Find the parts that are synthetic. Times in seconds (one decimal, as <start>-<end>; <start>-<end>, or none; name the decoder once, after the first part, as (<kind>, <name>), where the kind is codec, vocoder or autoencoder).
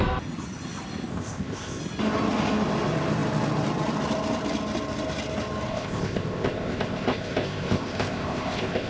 1.1-1.8 (codec, ZipCodec); 5.7-8.9